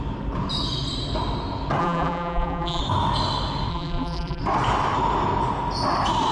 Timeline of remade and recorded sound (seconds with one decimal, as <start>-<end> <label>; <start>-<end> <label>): 0.0-1.8 recorded; 1.8-2.8 remade; 2.8-3.7 recorded; 3.7-4.4 remade; 4.4-6.3 recorded